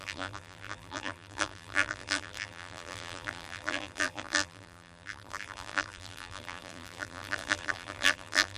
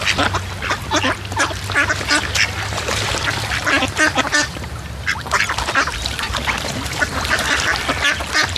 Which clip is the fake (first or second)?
first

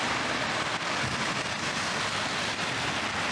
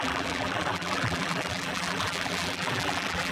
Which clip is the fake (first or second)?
second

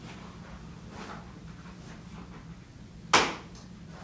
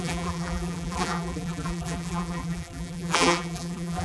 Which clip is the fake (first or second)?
second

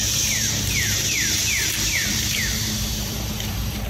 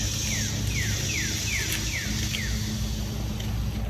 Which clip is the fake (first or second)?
first